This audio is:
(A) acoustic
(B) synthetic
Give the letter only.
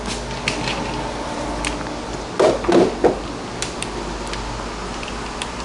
A